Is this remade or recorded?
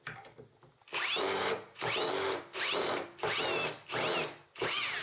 recorded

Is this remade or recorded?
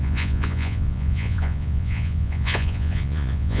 remade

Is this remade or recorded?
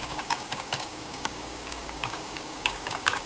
remade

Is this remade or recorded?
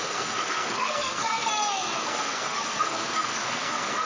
remade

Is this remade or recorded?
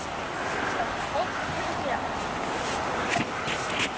recorded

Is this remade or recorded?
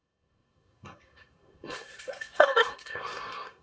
remade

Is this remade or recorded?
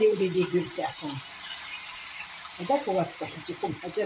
remade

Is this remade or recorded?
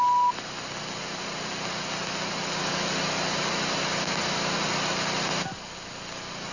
recorded